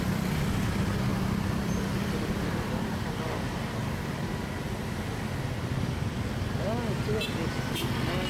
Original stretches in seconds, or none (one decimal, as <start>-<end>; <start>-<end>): 0.0-1.1; 3.1-3.8; 4.4-8.3